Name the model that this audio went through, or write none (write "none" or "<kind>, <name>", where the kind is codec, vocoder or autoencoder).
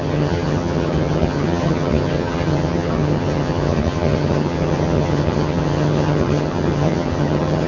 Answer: vocoder, HiFi-GAN